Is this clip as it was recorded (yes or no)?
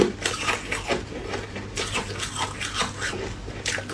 yes